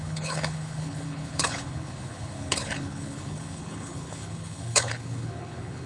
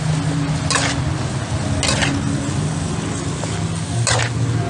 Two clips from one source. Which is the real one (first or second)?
second